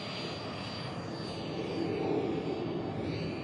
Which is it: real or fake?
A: real